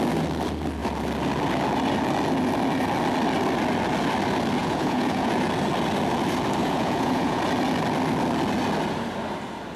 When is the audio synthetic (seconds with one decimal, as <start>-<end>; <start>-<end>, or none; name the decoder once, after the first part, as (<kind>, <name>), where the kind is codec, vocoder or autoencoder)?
4.6-5.3 (vocoder, Vocos); 6.6-7.4